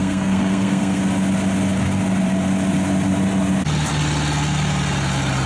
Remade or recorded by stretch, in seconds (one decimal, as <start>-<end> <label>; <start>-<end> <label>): 0.0-1.0 remade; 1.0-5.5 recorded